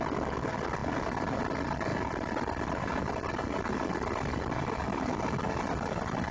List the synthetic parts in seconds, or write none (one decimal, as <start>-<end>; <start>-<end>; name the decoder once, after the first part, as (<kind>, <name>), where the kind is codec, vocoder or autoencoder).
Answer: none